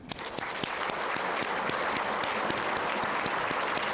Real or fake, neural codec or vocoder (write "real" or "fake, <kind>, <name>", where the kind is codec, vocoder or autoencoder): real